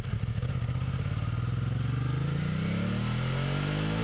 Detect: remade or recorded recorded